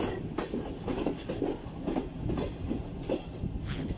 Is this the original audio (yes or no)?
yes